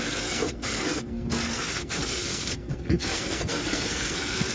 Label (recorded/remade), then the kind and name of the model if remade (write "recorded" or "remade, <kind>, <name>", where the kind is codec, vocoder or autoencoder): remade, codec, SNAC